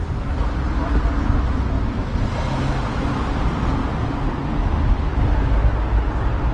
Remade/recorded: recorded